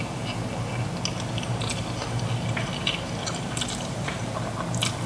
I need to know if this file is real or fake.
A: real